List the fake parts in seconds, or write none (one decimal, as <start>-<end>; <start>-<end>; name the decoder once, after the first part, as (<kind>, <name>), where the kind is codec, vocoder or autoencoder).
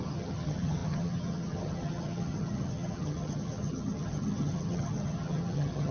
0.0-5.9 (vocoder, HiFi-GAN)